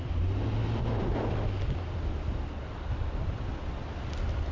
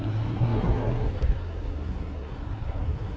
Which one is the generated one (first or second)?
second